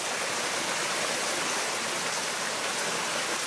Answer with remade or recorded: recorded